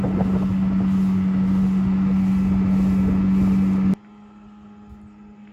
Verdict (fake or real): real